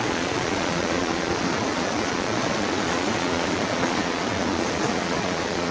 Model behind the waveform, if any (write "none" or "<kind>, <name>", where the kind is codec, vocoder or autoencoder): vocoder, Vocos